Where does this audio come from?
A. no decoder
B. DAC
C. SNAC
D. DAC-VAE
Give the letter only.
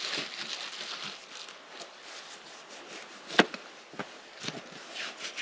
A